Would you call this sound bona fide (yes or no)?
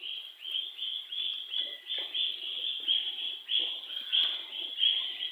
yes